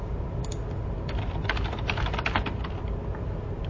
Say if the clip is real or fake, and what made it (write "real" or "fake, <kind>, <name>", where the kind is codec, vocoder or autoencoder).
real